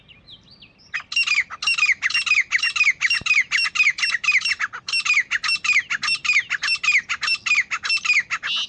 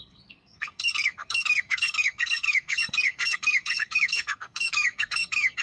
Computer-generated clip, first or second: second